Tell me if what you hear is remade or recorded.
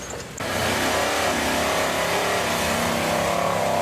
recorded